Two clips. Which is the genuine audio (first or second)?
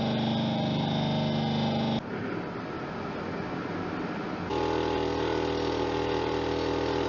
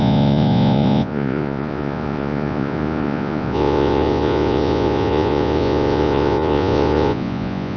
first